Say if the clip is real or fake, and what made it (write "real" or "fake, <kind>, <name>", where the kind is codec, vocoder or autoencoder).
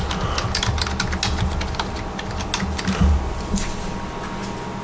real